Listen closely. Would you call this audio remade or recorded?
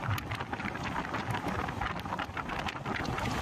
remade